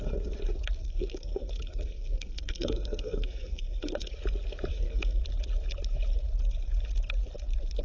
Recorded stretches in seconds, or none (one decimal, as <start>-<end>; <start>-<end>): 0.0-0.8; 4.1-4.7; 5.2-7.8

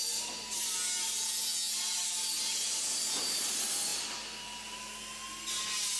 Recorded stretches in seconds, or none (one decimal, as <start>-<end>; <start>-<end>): 0.0-6.0

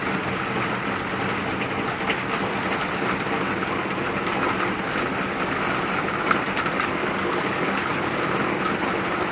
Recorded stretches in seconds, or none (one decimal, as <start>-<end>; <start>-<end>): 0.0-7.0; 7.7-9.3

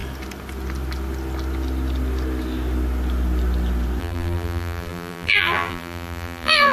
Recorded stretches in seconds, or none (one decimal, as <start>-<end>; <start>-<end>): 0.0-4.0

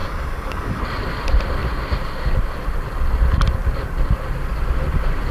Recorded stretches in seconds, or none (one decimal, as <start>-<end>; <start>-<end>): 0.8-5.3

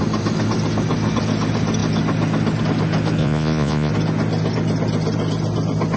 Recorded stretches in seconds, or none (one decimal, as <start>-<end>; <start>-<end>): 0.0-3.2; 3.9-6.0

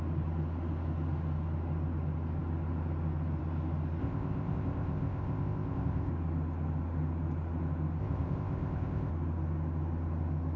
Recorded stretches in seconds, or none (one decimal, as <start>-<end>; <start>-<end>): 0.0-4.0; 6.1-8.0; 9.1-10.6

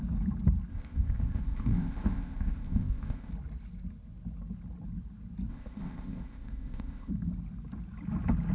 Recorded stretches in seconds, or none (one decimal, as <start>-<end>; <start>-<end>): 0.0-0.7; 3.3-5.5; 7.1-8.5